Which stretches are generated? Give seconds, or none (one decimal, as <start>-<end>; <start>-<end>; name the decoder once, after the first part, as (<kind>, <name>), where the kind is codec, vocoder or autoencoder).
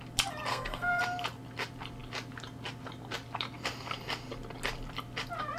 0.5-1.0 (codec, SNAC)